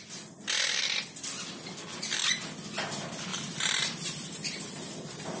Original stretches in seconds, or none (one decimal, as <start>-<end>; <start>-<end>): 0.0-3.3